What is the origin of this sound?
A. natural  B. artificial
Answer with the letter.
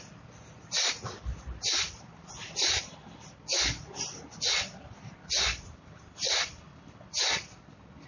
B